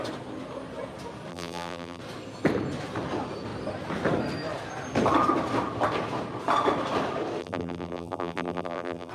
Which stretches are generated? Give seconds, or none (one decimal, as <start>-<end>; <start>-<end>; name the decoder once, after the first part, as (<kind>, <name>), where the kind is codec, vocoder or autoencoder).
1.3-2.0 (vocoder, BigVGAN v2); 7.4-9.1